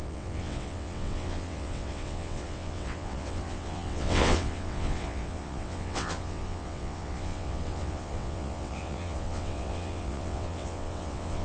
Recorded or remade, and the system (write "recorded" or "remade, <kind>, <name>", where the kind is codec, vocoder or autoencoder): remade, vocoder, WaveNeXt